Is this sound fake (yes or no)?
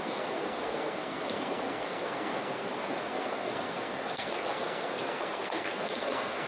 yes